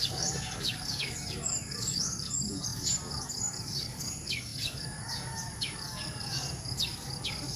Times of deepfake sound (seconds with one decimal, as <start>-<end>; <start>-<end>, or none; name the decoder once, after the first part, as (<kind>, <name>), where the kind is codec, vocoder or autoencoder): 0.0-7.6 (codec, DAC)